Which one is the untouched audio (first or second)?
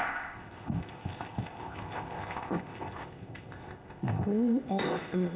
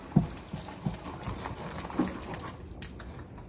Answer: second